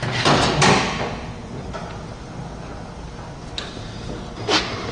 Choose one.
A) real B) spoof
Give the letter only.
A